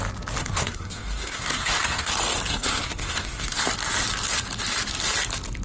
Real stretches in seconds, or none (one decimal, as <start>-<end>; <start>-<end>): 0.0-0.4; 2.1-2.5; 3.6-5.6